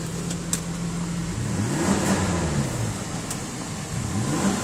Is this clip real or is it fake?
real